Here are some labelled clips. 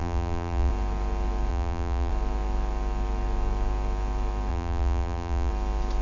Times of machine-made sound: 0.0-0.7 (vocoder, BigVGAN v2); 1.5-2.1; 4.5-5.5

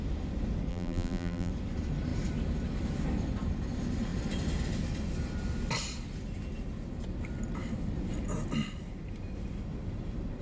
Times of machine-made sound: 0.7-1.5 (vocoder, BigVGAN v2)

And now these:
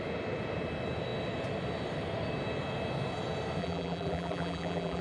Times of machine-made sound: 3.6-5.0 (vocoder, BigVGAN v2)

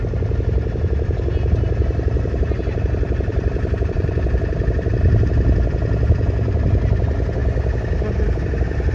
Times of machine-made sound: 1.8-2.8 (vocoder, BigVGAN v2); 3.3-5.3

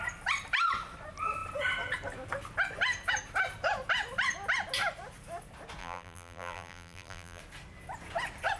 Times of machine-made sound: 5.8-7.4 (vocoder, BigVGAN v2)